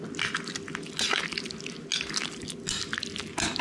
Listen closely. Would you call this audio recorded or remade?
recorded